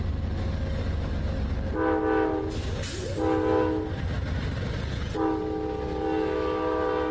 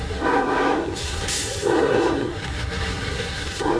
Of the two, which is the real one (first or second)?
first